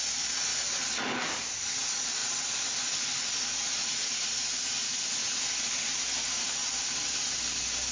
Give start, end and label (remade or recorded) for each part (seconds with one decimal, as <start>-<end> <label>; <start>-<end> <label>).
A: 0.0-6.6 recorded; 6.6-7.9 remade